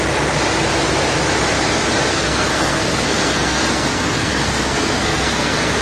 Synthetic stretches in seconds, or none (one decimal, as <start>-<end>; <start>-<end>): 2.1-5.8